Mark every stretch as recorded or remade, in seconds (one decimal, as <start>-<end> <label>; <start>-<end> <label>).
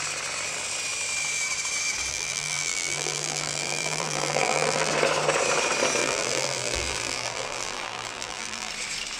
0.0-2.1 recorded; 2.1-4.9 remade; 4.9-6.0 recorded; 6.0-8.7 remade; 8.7-9.2 recorded